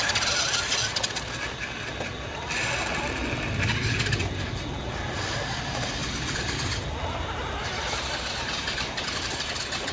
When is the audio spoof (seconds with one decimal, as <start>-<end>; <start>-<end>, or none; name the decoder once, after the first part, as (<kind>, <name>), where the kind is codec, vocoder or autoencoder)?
none